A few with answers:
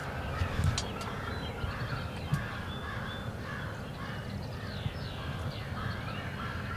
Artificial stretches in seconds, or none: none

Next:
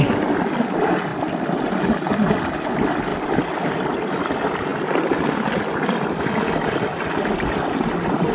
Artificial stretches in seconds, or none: none